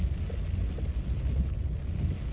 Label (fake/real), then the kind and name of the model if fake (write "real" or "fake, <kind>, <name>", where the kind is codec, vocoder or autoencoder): real